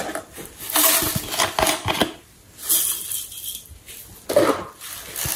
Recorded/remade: recorded